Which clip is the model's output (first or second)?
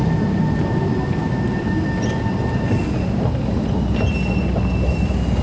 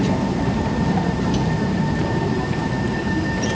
second